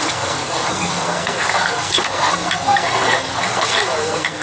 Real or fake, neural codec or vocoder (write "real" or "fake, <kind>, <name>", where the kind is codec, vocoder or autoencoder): fake, codec, SNAC